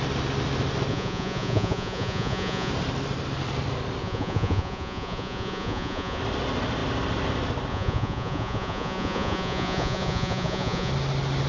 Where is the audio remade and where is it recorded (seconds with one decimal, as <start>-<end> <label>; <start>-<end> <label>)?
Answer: 0.0-0.9 recorded; 0.9-2.7 remade; 2.7-4.0 recorded; 4.0-6.2 remade; 6.2-7.7 recorded; 7.7-10.9 remade; 10.9-11.5 recorded